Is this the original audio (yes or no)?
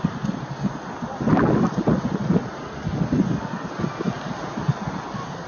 yes